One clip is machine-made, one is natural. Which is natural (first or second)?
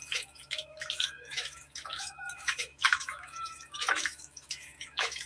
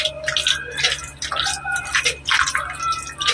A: second